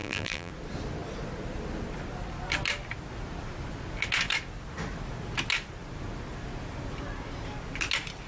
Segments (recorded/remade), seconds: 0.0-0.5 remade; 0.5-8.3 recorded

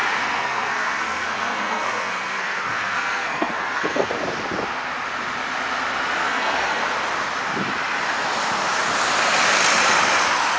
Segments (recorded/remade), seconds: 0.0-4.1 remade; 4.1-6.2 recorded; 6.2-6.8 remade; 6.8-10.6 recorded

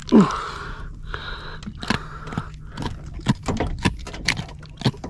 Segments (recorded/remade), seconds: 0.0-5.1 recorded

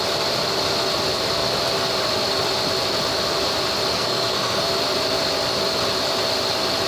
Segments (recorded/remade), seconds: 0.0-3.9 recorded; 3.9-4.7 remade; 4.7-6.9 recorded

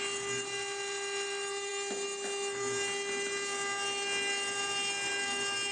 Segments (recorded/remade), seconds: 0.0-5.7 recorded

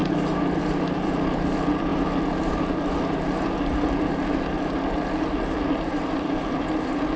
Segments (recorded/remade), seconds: 0.0-0.6 recorded; 0.6-1.9 remade; 1.9-5.0 recorded; 5.0-7.2 remade

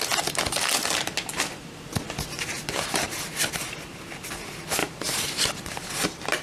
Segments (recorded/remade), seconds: 0.0-4.8 recorded; 4.8-5.6 remade; 5.6-6.4 recorded